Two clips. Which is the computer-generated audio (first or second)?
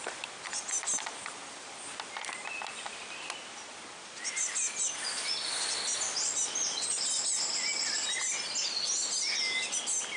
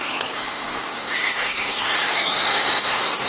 second